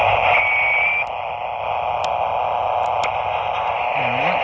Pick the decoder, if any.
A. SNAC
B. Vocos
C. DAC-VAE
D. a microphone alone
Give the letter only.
D